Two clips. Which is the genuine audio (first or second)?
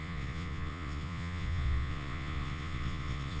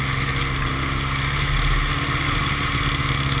second